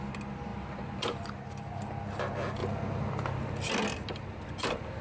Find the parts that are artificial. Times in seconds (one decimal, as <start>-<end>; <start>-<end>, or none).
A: 0.5-1.5